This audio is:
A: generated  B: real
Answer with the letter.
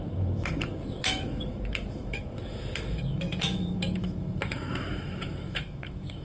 A